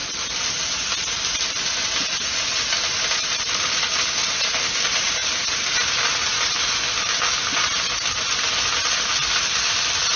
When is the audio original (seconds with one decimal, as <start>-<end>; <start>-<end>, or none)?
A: 0.0-10.2